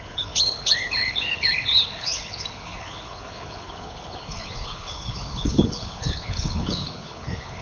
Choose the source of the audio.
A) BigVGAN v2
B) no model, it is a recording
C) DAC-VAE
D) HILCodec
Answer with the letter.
D